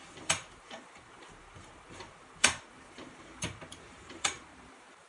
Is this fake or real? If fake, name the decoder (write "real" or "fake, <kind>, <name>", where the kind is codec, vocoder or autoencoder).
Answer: fake, vocoder, BigVGAN v2